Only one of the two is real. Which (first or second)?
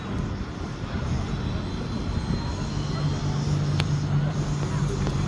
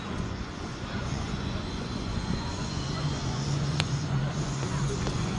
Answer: first